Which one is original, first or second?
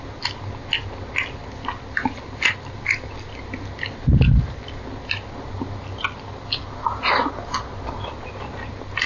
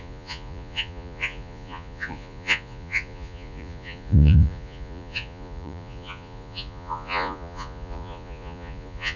first